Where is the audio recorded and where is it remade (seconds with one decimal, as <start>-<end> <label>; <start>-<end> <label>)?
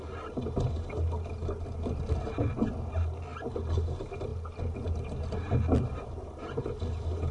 0.0-7.3 recorded